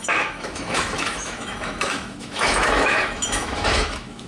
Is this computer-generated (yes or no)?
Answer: yes